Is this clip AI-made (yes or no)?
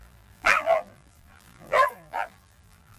yes